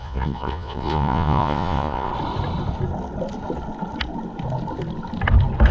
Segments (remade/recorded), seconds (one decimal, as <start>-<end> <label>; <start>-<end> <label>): 0.0-2.1 remade; 2.1-5.7 recorded